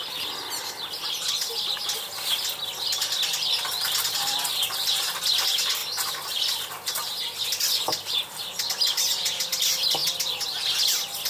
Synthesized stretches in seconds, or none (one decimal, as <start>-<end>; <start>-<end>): none